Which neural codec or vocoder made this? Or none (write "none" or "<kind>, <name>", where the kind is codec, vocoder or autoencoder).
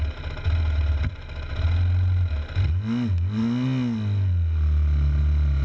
none